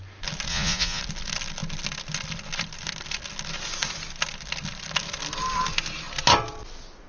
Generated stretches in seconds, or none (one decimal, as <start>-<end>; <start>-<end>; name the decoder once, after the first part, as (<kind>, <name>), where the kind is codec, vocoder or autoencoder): 0.5-1.0 (vocoder, Vocos)